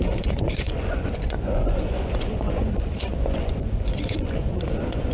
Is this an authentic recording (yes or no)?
no